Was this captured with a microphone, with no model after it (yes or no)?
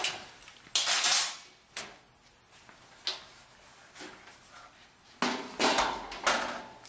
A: yes